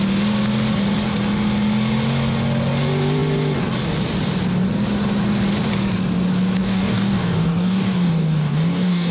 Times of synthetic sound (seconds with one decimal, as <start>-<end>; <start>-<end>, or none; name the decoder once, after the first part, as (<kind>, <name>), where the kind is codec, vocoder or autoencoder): 6.6-9.1 (codec, DAC)